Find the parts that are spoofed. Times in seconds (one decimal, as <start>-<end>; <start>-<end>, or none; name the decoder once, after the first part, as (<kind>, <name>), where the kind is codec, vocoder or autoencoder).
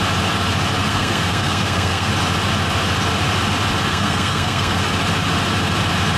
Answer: 0.8-2.1 (codec, SNAC); 3.9-4.8